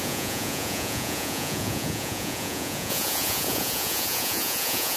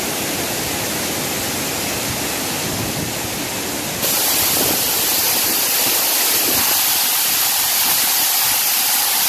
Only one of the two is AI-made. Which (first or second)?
first